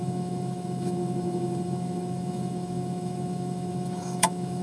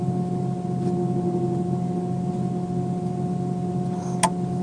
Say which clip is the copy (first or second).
first